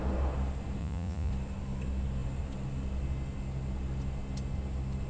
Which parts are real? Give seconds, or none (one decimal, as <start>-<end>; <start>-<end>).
0.0-0.8; 1.3-5.1